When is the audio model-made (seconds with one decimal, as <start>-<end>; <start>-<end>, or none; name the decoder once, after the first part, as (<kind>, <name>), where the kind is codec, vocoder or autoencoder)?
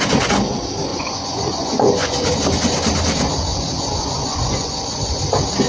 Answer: 0.9-2.3 (vocoder, Vocos); 3.5-5.2